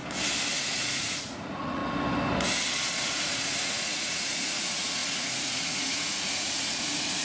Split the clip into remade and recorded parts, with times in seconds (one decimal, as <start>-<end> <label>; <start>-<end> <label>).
0.0-0.5 recorded; 0.5-1.8 remade; 1.8-3.0 recorded; 3.0-7.2 remade